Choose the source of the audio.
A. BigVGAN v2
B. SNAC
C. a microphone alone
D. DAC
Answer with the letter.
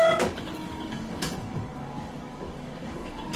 D